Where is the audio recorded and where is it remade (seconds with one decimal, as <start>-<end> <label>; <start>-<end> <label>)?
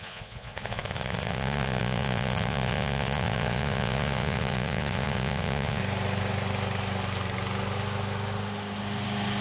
0.0-5.8 remade; 5.8-9.4 recorded